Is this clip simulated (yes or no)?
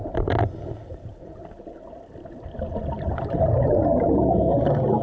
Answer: no